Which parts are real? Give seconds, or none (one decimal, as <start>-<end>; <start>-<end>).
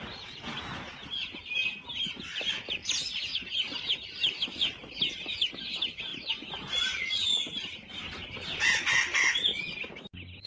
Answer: 0.0-10.5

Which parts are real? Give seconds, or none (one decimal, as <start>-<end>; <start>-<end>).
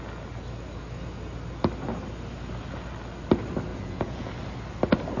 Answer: 0.0-3.7; 4.3-5.2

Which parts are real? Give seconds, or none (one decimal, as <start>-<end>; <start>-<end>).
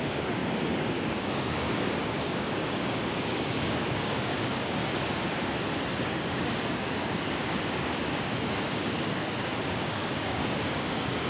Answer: 4.8-5.9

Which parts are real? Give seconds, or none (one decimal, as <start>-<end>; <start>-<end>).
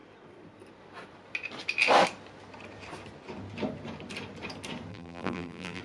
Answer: 0.0-4.9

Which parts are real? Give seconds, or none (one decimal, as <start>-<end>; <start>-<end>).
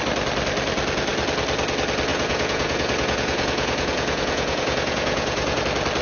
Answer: 0.0-2.1; 5.6-6.0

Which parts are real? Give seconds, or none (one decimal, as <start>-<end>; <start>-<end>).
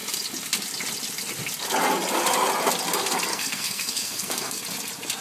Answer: 0.0-3.3; 4.6-5.2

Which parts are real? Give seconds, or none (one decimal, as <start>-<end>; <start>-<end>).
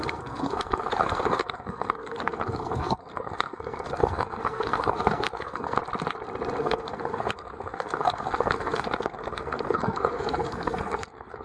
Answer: 5.8-6.6